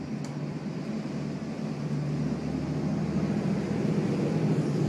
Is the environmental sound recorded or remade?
recorded